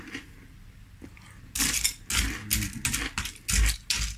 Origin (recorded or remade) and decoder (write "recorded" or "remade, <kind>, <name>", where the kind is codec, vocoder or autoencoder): recorded